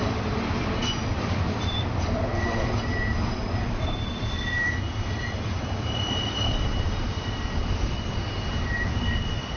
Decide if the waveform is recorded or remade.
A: remade